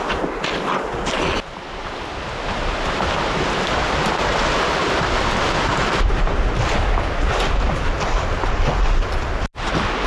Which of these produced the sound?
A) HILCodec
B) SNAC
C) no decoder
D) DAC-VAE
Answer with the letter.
C